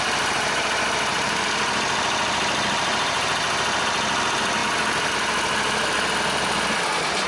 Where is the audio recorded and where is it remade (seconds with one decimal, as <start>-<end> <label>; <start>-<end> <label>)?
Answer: 0.0-7.3 recorded